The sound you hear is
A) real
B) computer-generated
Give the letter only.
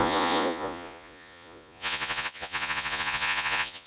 B